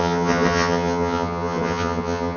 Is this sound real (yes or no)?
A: no